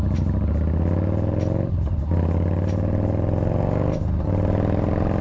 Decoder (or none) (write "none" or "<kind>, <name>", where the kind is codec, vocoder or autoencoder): none